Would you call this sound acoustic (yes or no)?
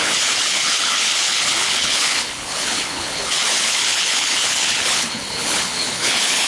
no